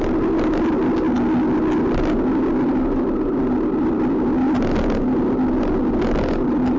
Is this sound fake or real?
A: real